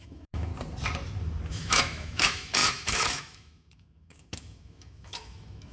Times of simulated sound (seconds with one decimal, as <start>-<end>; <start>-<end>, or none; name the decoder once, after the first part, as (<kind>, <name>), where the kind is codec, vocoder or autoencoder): 0.0-0.5 (autoencoder, DAC-VAE); 1.5-5.7